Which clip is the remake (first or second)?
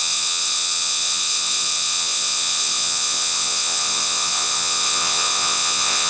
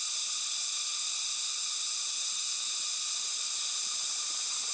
first